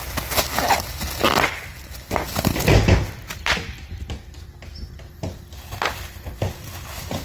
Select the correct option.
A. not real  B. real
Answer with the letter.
B